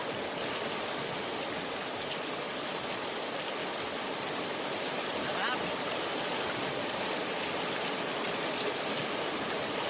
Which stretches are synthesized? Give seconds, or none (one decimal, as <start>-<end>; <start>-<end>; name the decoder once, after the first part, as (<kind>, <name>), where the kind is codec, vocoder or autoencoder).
none